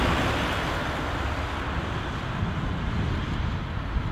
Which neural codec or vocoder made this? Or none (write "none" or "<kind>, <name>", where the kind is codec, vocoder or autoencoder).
none